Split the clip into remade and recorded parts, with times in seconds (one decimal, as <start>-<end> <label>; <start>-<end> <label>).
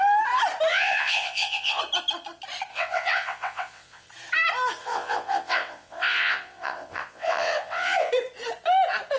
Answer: 0.0-0.7 recorded; 0.7-1.8 remade; 1.8-2.7 recorded; 2.7-4.1 remade; 4.1-4.8 recorded; 4.8-8.1 remade; 8.1-9.2 recorded